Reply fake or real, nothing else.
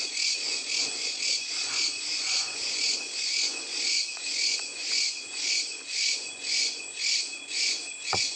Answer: fake